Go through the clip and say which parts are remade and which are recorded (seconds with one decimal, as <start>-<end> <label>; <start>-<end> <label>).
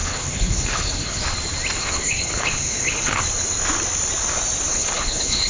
0.0-1.2 remade; 1.2-1.8 recorded; 1.8-3.2 remade; 3.2-4.7 recorded; 4.7-5.5 remade